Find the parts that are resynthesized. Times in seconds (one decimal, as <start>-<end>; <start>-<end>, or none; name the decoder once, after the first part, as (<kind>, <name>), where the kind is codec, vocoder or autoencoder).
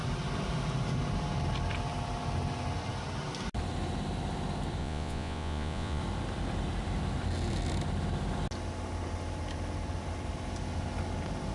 4.8-6.0 (vocoder, Vocos)